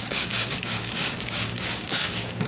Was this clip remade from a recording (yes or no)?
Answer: yes